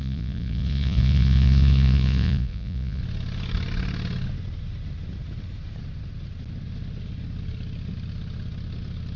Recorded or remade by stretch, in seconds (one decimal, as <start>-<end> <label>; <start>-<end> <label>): 0.0-3.0 remade; 3.0-9.2 recorded